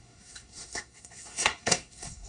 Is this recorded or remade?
remade